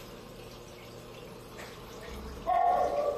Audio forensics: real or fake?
real